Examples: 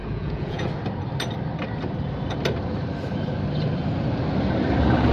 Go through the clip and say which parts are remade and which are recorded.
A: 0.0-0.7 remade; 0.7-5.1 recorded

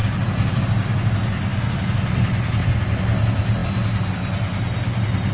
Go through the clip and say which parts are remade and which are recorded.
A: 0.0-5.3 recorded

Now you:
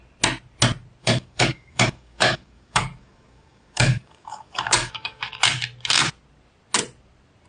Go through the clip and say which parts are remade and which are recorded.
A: 0.0-1.0 recorded; 1.0-5.2 remade; 5.2-7.5 recorded

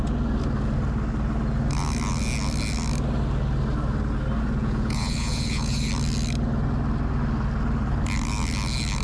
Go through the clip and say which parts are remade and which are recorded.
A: 0.0-4.6 recorded; 4.6-5.9 remade; 5.9-9.0 recorded

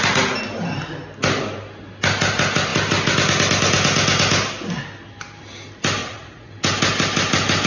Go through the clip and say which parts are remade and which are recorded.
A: 0.0-6.0 recorded; 6.0-6.5 remade; 6.5-7.7 recorded

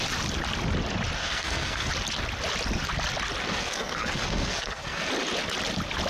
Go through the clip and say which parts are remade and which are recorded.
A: 0.0-1.2 recorded; 1.2-1.9 remade; 1.9-3.4 recorded; 3.4-5.1 remade; 5.1-6.1 recorded